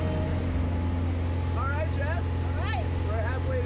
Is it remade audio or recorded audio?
recorded